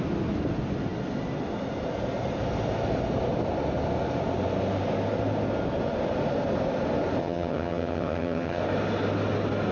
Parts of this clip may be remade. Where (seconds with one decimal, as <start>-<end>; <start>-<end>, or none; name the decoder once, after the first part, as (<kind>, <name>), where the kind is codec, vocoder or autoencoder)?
7.2-8.6 (vocoder, HiFi-GAN)

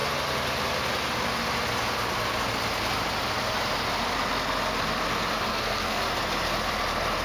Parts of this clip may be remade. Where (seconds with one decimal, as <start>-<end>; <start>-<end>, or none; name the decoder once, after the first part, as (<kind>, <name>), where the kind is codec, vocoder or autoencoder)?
5.5-6.0 (codec, SNAC)